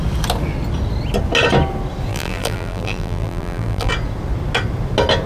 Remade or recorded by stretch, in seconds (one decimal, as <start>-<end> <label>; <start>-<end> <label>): 0.0-2.1 recorded; 2.1-3.9 remade; 3.9-5.3 recorded